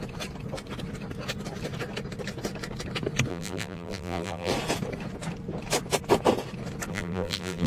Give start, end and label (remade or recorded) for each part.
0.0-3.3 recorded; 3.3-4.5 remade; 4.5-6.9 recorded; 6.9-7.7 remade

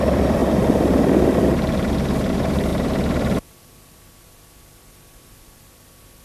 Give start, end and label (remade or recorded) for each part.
0.0-0.4 remade; 0.4-2.3 recorded; 2.3-2.7 remade; 2.7-5.2 recorded; 5.2-6.2 remade

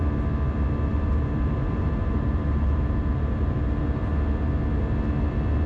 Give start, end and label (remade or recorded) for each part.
0.0-0.9 recorded; 0.9-4.1 remade; 4.1-5.7 recorded

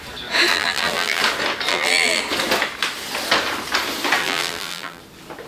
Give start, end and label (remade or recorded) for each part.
0.0-0.5 recorded; 0.5-1.2 remade; 1.2-1.7 recorded; 1.7-2.2 remade; 2.2-4.2 recorded; 4.2-5.0 remade; 5.0-5.5 recorded